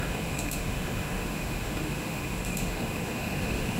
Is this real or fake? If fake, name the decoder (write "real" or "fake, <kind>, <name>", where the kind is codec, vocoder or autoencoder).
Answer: fake, autoencoder, DAC-VAE